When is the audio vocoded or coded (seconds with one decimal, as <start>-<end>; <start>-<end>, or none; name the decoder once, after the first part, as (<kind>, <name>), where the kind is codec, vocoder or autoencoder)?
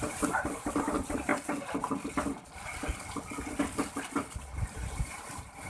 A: 0.0-1.3 (vocoder, BigVGAN v2); 4.7-5.7